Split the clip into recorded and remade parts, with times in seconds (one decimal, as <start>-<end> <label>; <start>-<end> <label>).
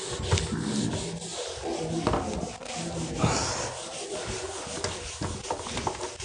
0.0-6.2 recorded